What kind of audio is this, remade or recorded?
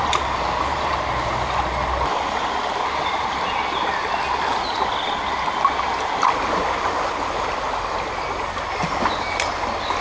recorded